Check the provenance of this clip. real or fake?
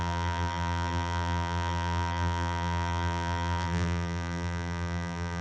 fake